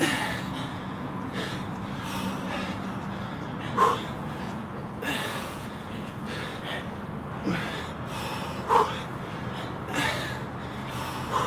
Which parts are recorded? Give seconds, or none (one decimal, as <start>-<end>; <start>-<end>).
1.5-3.8; 6.5-10.9